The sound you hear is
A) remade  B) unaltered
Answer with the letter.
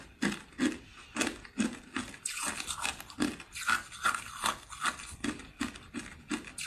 B